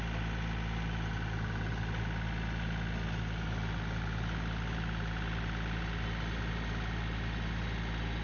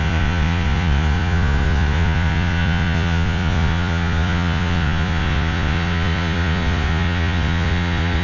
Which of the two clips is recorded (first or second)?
first